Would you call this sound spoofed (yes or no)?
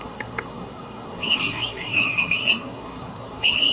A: yes